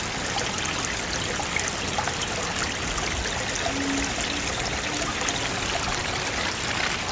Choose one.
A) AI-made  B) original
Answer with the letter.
B